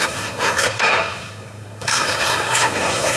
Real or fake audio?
fake